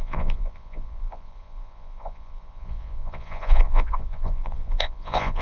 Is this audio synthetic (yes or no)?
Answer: yes